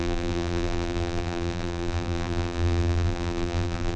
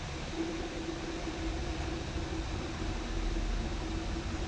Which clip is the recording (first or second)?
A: second